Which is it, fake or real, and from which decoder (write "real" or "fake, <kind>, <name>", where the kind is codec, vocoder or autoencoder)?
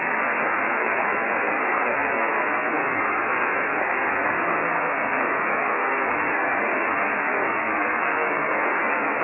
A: fake, codec, SNAC